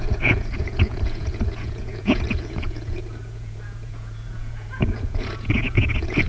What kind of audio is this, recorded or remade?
remade